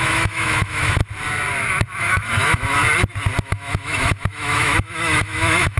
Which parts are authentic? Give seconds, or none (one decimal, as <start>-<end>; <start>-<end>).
1.0-2.0; 2.8-3.4